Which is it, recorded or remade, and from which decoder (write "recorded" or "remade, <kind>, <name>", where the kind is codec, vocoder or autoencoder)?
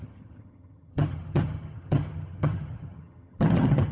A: remade, vocoder, HiFi-GAN